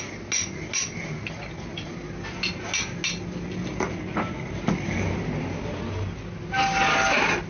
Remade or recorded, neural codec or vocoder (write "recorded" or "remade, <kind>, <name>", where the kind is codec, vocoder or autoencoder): recorded